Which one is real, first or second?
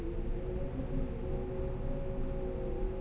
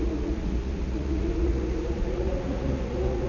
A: first